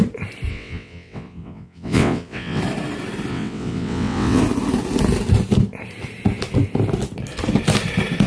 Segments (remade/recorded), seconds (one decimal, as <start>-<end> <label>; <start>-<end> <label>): 0.0-0.5 recorded; 0.5-2.6 remade; 2.6-3.3 recorded; 3.3-4.4 remade; 4.4-8.3 recorded